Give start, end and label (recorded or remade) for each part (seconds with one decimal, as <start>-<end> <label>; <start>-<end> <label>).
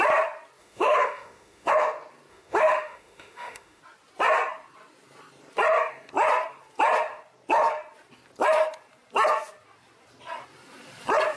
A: 0.0-0.6 recorded; 0.6-1.7 remade; 1.7-2.3 recorded; 2.3-3.8 remade; 3.8-11.4 recorded